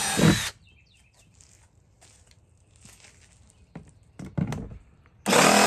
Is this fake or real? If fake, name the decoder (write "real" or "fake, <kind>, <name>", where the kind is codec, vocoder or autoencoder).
real